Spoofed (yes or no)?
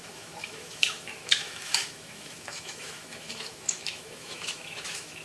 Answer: yes